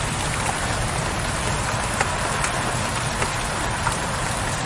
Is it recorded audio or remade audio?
recorded